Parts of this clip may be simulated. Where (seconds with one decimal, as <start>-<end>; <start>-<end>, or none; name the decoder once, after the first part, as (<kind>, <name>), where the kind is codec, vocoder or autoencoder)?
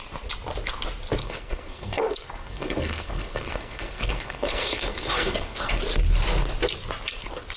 1.2-5.8 (codec, SNAC)